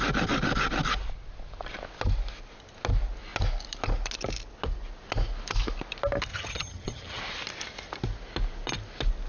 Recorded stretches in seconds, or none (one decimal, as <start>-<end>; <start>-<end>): 0.0-6.3; 7.2-9.3